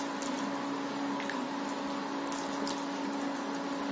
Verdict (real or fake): real